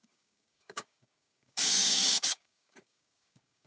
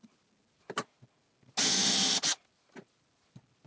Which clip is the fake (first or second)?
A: first